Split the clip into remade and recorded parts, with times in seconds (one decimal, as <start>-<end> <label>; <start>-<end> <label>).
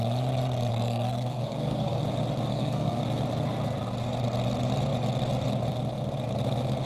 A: 0.0-0.7 recorded; 0.7-2.0 remade; 2.0-2.5 recorded; 2.5-3.0 remade; 3.0-6.9 recorded